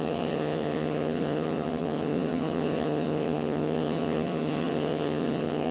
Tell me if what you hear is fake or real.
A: fake